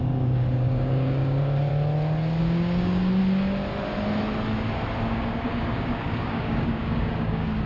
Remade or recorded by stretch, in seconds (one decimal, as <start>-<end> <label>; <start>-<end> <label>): 0.0-1.7 remade; 1.7-2.4 recorded; 2.4-3.2 remade; 3.2-5.0 recorded; 5.0-7.7 remade